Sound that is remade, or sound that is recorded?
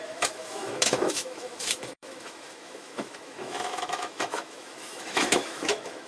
remade